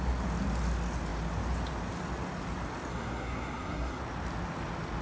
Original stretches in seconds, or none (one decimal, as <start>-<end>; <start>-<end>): 0.0-2.9; 4.0-5.0